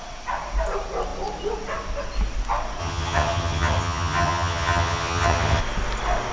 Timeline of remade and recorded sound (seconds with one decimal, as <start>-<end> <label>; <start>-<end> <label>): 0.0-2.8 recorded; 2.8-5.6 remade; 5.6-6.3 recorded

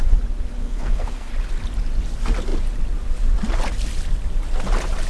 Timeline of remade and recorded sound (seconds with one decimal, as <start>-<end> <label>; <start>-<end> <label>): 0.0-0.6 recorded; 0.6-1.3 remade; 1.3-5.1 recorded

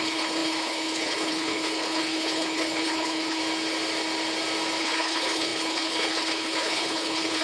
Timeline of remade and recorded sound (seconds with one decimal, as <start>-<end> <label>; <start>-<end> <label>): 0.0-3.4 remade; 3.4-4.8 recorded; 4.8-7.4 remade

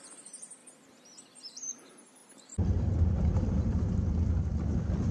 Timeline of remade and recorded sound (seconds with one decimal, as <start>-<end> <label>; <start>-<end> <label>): 0.0-0.6 remade; 0.6-1.2 recorded; 1.2-5.1 remade

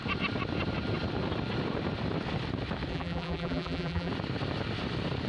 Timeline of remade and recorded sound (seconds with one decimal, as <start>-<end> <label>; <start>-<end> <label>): 0.0-2.9 recorded; 2.9-4.1 remade; 4.1-5.3 recorded

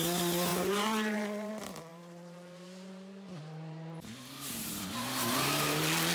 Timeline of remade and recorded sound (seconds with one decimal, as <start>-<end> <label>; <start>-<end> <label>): 0.0-0.5 recorded; 0.5-1.5 remade; 1.5-1.9 recorded; 1.9-4.9 remade; 4.9-6.1 recorded

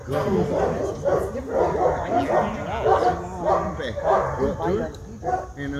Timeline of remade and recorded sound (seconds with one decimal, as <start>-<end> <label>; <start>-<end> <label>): 0.0-5.8 recorded